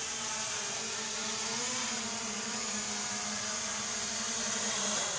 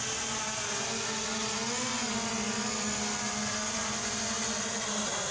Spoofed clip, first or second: first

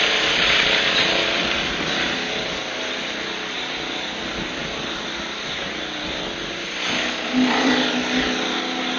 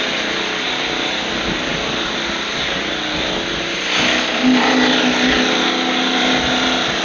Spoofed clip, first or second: first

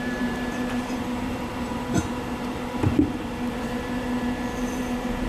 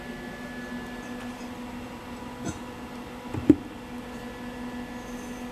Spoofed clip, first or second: first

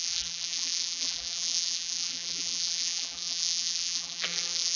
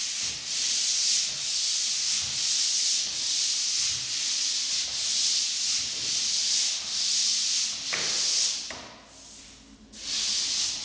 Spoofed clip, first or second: first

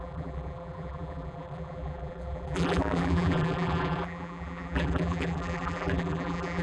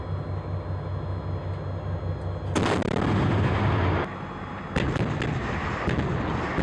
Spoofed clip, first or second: first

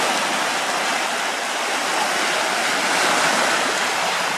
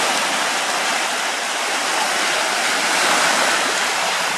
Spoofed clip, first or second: second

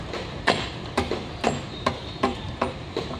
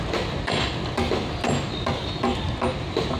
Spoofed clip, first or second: first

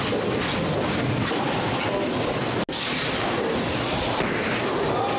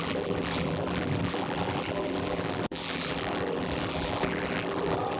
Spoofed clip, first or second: second